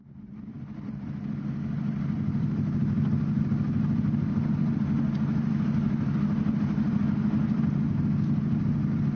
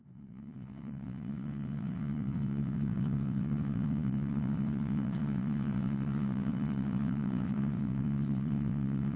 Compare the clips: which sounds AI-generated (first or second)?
second